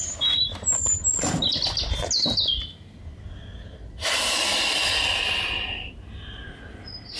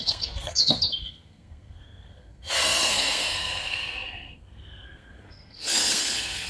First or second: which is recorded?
first